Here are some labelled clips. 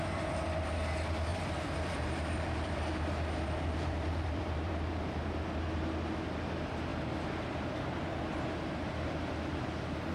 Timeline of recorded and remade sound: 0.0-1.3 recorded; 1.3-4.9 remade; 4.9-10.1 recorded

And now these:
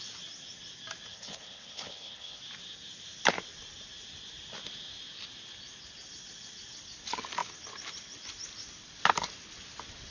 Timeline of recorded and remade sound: 0.0-1.1 recorded; 1.1-2.4 remade; 2.4-10.1 recorded